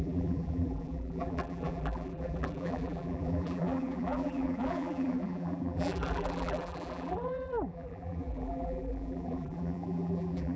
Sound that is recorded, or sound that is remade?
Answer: remade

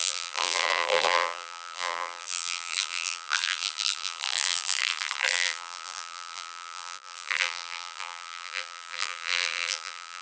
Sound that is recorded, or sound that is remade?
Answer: remade